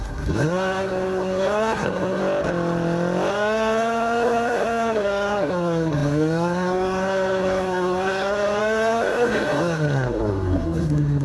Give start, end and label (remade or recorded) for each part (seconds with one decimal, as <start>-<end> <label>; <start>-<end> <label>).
0.0-2.2 remade; 2.2-3.3 recorded; 3.3-11.2 remade